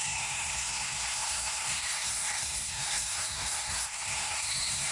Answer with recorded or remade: remade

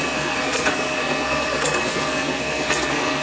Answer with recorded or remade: remade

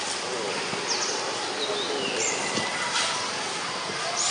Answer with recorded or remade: recorded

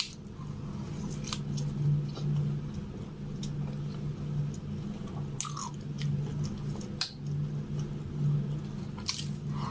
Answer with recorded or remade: recorded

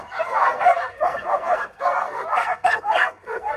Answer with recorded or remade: remade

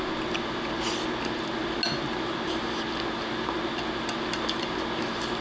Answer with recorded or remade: recorded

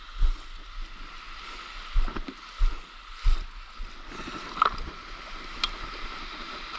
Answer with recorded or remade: recorded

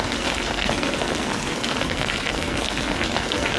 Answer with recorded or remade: remade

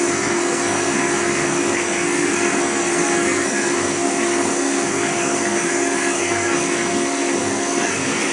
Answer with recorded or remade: remade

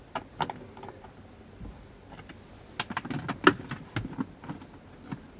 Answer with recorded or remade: recorded